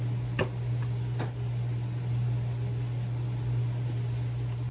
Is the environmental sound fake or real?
real